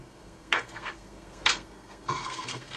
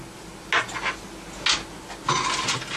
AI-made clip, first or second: first